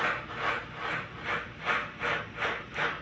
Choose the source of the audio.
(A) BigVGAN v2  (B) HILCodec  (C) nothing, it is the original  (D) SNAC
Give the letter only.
A